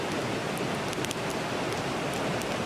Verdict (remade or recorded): recorded